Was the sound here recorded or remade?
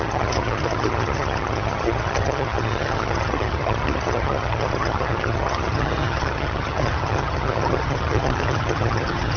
remade